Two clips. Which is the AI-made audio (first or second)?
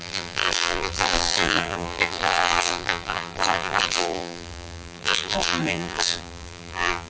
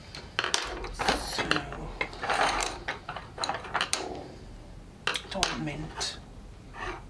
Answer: first